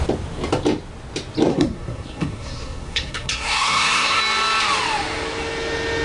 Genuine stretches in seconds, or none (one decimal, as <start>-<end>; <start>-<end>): 0.0-1.5; 4.2-6.0